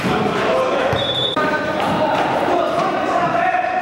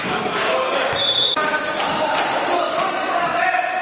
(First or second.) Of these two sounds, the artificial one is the first